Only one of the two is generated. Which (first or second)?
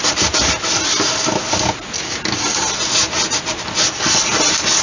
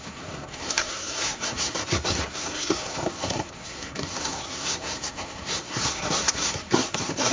second